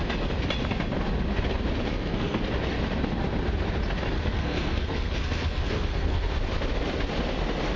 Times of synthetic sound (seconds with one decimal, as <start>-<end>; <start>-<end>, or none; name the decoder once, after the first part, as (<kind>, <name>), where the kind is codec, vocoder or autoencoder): 1.9-2.4 (codec, SNAC); 4.3-6.3